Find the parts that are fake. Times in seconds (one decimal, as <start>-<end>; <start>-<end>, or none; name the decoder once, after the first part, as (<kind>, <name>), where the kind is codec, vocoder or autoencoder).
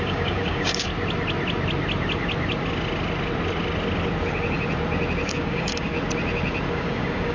0.0-0.9 (codec, DAC); 5.3-5.9; 6.7-7.3